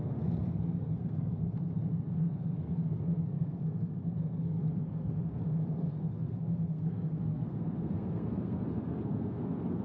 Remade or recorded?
remade